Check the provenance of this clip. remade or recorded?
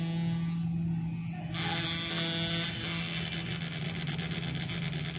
recorded